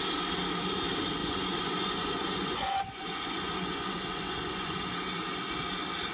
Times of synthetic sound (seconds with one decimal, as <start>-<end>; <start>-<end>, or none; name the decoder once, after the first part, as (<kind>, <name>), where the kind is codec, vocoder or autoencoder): 1.2-4.9 (vocoder, Vocos)